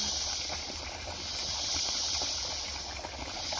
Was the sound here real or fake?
fake